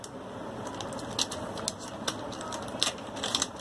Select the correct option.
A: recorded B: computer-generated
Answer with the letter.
A